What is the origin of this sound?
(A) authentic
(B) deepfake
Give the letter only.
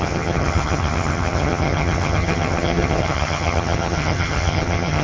B